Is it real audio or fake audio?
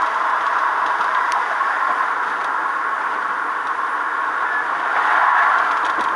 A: real